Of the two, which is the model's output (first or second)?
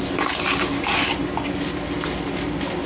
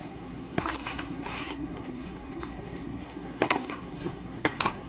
second